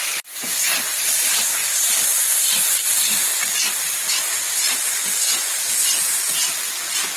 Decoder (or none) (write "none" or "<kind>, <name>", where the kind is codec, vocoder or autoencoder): none